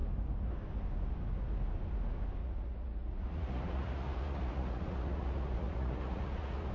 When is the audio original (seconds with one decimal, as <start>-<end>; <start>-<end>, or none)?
0.0-2.4